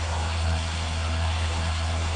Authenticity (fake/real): fake